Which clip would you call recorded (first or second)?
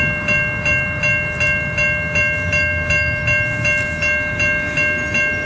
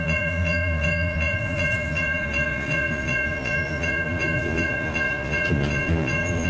first